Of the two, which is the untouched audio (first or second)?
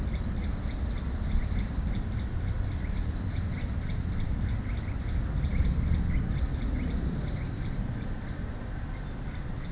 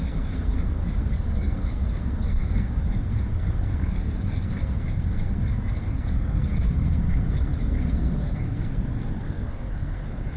first